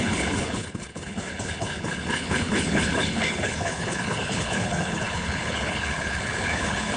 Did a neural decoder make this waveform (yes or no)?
yes